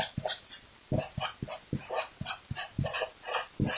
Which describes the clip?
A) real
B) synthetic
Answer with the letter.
A